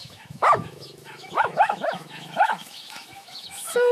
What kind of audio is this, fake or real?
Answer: fake